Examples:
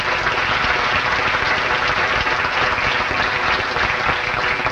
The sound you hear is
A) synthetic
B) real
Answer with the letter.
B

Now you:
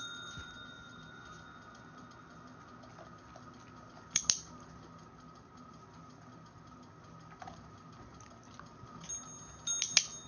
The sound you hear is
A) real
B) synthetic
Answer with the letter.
A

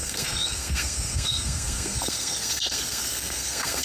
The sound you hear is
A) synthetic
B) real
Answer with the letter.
A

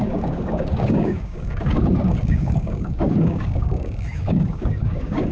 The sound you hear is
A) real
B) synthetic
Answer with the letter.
B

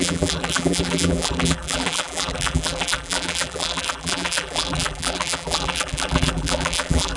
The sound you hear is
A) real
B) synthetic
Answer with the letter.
B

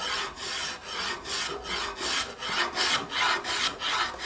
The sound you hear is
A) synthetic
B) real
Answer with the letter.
B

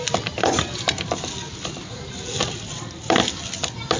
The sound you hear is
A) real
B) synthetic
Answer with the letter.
A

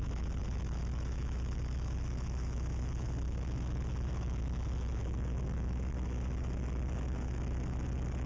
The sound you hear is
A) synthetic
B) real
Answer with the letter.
A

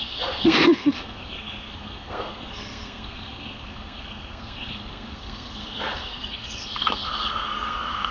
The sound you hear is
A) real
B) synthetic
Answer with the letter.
B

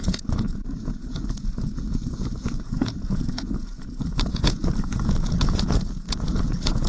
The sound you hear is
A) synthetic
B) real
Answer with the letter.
A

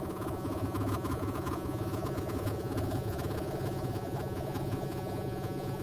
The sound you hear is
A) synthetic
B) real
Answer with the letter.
A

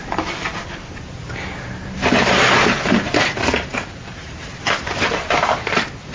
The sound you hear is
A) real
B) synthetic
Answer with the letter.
B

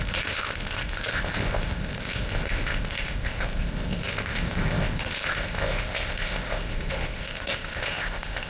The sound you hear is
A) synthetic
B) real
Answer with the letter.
A